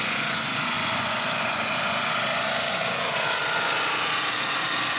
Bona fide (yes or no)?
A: no